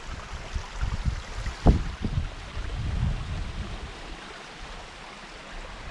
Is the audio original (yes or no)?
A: yes